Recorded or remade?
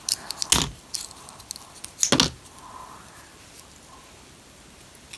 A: recorded